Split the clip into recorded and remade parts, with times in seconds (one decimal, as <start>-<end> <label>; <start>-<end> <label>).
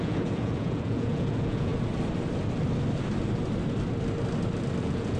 0.0-1.7 remade; 1.7-4.8 recorded; 4.8-5.2 remade